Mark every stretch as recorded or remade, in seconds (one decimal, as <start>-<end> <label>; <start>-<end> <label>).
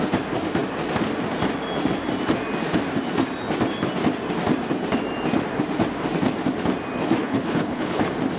0.0-7.2 recorded; 7.2-8.0 remade; 8.0-8.4 recorded